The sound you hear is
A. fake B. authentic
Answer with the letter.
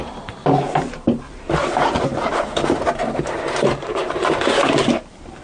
A